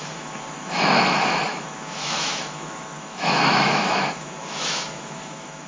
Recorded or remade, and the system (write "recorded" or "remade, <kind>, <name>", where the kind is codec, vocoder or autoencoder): remade, autoencoder, DAC-VAE